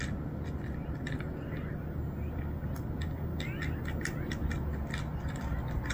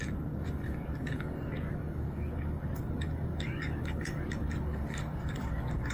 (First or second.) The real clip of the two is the first